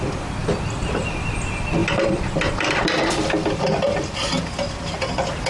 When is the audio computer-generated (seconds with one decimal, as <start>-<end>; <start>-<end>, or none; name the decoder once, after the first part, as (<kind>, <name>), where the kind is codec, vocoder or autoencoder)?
none